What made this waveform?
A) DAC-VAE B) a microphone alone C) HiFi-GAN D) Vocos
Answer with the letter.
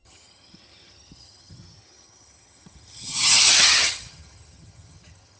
C